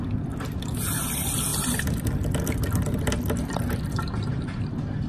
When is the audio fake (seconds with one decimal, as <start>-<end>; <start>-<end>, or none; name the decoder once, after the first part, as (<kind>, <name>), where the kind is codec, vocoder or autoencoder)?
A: 1.5-4.6 (vocoder, BigVGAN v2)

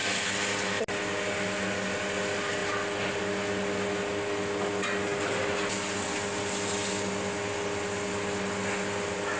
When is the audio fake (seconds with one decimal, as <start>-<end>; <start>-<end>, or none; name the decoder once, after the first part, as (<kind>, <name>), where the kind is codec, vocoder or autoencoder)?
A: none

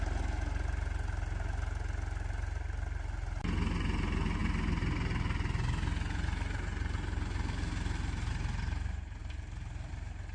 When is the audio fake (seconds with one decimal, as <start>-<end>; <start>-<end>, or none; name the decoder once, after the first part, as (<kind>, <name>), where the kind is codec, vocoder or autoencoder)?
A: none

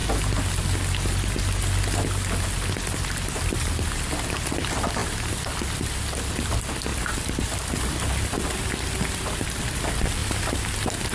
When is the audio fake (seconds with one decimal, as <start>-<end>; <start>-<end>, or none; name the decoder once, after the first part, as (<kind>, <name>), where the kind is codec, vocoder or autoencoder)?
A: 2.7-10.2 (vocoder, BigVGAN v2)

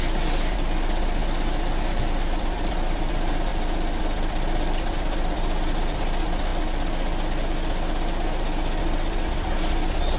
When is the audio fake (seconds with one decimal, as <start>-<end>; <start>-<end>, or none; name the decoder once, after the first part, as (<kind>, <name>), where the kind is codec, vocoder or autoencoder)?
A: 0.0-1.2 (vocoder, BigVGAN v2); 2.0-3.5; 4.0-6.5; 8.8-10.2

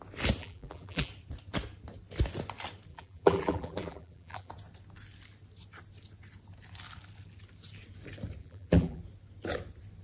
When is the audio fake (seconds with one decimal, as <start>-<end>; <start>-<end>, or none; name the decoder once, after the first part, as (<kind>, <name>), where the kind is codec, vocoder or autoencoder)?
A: 0.4-1.1 (vocoder, BigVGAN v2); 2.9-4.5; 8.4-9.0

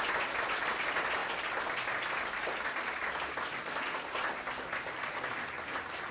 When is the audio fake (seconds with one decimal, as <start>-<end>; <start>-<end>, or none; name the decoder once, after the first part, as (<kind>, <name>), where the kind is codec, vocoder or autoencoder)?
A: 1.2-4.1 (vocoder, BigVGAN v2)